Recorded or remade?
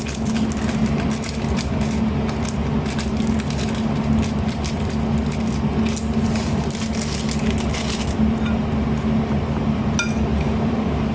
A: recorded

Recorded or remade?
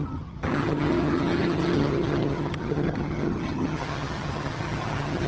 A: remade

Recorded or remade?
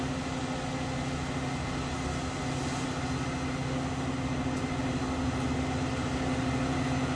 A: recorded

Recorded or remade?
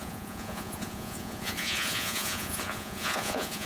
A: remade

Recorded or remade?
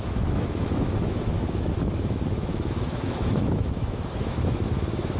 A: remade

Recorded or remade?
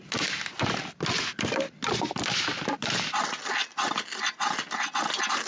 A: recorded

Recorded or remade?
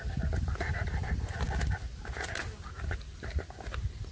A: recorded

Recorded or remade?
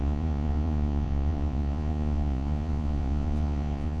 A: remade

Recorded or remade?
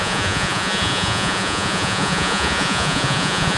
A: remade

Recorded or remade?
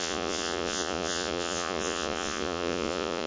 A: remade